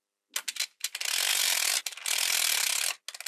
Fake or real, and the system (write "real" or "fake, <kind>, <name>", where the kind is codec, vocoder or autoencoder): real